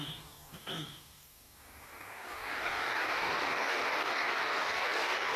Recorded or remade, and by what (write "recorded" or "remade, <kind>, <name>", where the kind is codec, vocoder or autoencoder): remade, codec, DAC